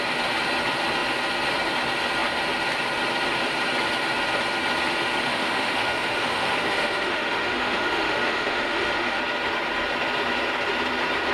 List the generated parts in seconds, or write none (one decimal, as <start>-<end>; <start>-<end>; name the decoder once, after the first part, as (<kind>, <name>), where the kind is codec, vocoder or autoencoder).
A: 5.3-9.2 (autoencoder, DAC-VAE)